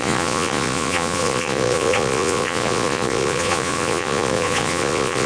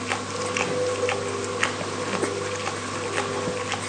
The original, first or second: second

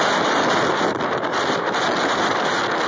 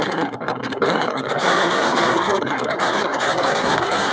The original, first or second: first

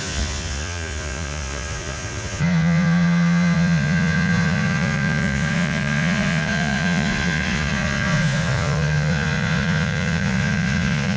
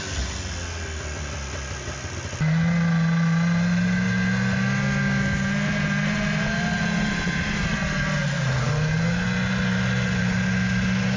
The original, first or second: second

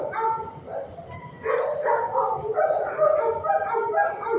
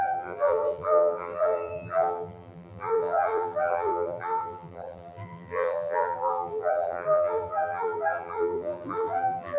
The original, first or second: first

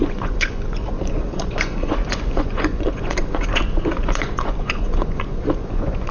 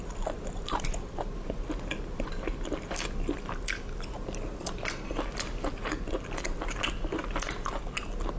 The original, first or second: second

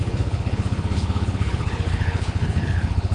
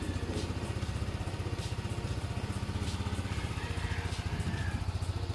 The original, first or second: second